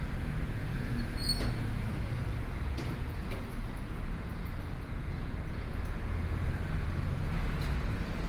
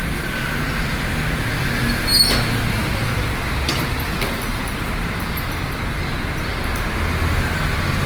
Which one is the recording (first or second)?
second